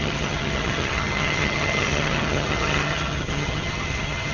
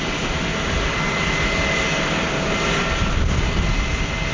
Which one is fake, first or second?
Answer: first